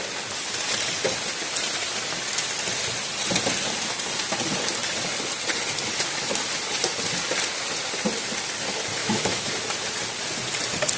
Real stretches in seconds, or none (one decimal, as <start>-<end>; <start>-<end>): 0.0-9.0; 9.5-11.0